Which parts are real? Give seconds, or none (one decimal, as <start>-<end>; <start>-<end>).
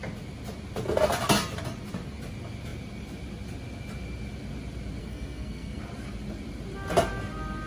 0.0-5.0; 5.8-7.7